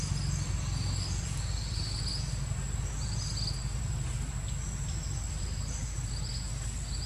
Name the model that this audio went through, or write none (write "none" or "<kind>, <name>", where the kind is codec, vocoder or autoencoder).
none